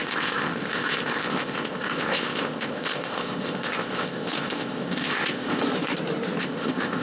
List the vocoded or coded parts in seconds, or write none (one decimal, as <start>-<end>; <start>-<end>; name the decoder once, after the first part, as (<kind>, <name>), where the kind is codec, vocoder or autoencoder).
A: 0.0-5.6 (codec, ZipCodec); 6.4-7.0